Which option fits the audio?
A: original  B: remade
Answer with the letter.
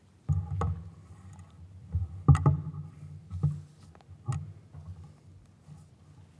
A